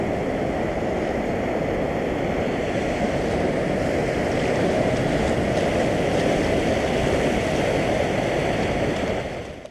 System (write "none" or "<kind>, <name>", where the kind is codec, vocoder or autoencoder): none